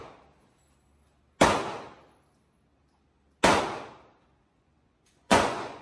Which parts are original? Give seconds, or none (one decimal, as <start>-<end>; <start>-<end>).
0.0-4.4